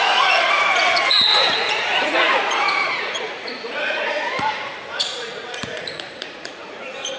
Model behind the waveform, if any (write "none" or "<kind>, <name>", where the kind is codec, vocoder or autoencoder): vocoder, Vocos